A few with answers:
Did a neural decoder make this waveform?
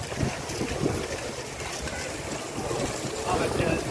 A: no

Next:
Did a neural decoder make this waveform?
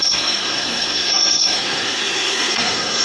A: yes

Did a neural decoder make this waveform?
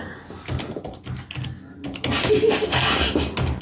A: no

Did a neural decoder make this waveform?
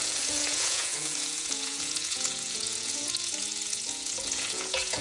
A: yes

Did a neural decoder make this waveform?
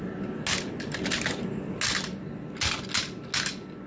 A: no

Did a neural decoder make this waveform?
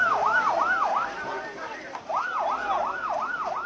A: no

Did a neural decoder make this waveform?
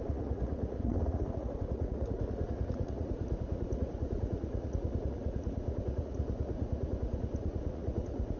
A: yes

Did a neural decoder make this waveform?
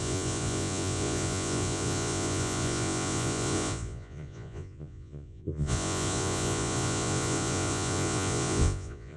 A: yes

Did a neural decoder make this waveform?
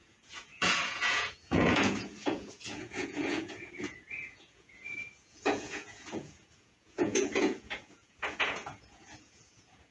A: yes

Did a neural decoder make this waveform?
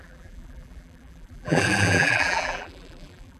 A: yes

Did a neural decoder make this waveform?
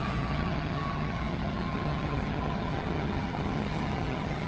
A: yes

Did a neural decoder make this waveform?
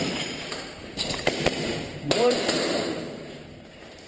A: yes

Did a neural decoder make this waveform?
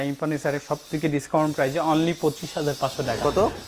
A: no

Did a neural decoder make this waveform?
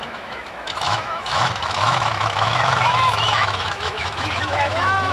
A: yes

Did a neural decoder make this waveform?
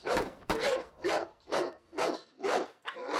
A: yes